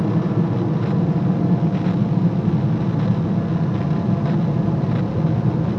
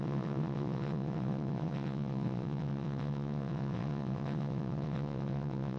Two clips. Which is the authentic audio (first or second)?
first